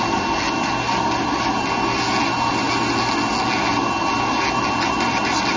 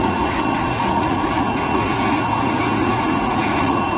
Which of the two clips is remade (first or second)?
second